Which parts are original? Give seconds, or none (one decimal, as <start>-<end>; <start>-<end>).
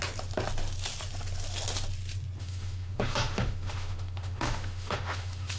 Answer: 0.0-2.4